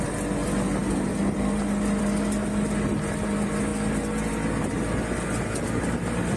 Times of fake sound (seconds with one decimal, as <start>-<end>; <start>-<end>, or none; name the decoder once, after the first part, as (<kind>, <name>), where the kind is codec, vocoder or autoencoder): none